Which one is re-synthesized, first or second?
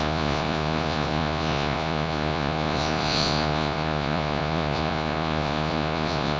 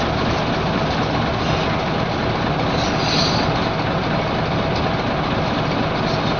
first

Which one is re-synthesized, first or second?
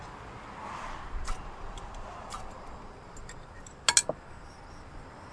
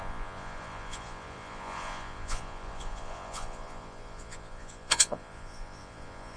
second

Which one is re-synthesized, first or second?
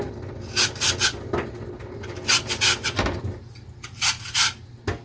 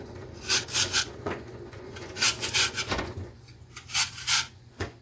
second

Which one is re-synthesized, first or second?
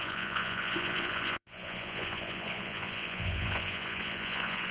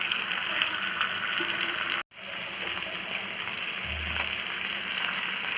first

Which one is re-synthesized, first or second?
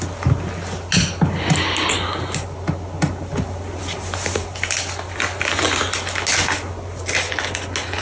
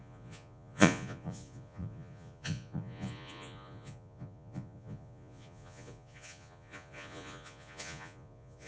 second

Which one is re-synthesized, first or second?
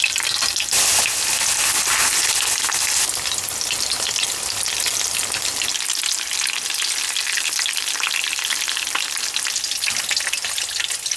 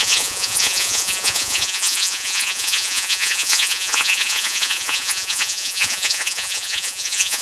second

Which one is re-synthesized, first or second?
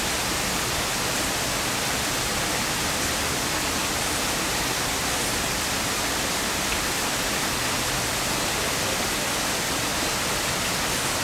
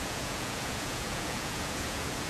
second